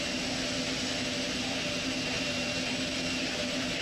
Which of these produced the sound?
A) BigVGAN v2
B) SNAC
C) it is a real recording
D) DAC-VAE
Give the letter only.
C